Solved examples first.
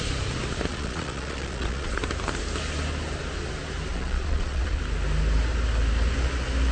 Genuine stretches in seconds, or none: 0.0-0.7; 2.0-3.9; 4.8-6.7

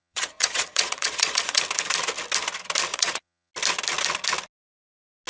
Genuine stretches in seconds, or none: 1.6-2.9; 3.5-5.3

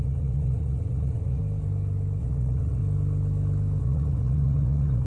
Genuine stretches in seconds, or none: 1.4-2.2; 2.8-3.8

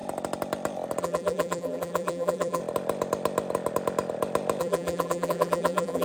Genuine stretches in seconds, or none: 0.0-1.0; 2.6-4.6

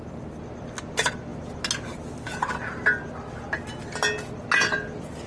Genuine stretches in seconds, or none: 0.0-5.3

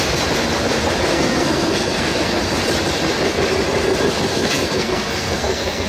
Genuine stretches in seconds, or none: 0.0-1.1; 2.4-4.3

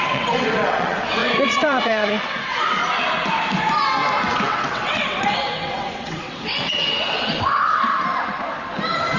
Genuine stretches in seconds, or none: 2.8-4.3; 7.9-9.2